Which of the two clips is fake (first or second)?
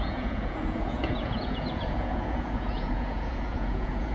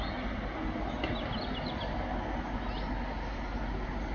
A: first